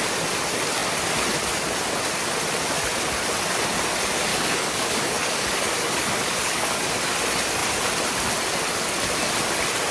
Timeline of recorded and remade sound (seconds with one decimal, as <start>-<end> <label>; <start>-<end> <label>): 0.0-4.3 recorded; 4.3-6.9 remade; 6.9-9.9 recorded